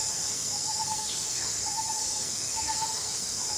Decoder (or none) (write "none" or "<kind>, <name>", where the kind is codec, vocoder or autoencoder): codec, SNAC